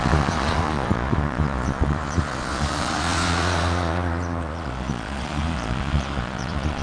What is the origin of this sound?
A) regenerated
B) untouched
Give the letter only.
A